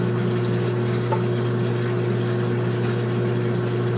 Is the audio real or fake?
real